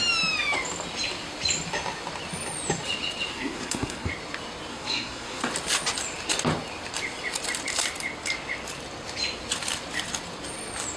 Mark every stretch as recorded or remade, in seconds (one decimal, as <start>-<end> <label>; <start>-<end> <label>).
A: 0.0-3.3 recorded; 3.3-4.1 remade; 4.1-4.7 recorded; 4.7-5.4 remade; 5.4-11.0 recorded